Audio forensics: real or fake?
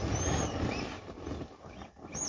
real